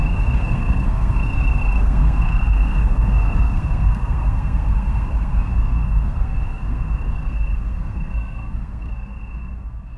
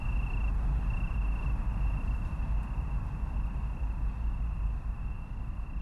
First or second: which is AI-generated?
first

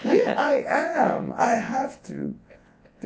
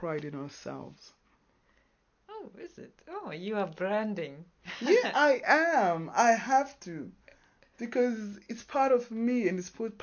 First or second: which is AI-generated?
first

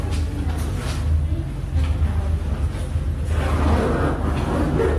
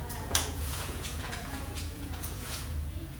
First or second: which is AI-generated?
second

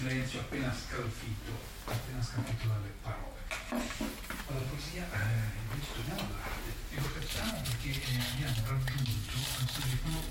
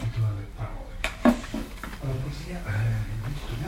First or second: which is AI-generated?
second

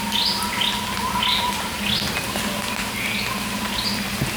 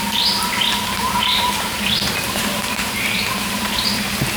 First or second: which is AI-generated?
second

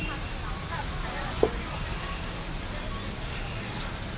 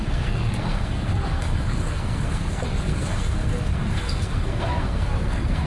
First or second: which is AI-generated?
second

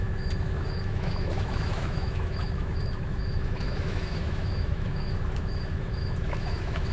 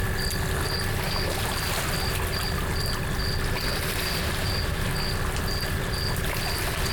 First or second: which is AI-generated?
first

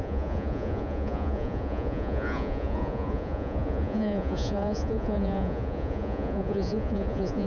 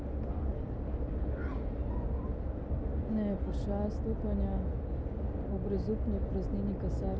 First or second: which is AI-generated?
first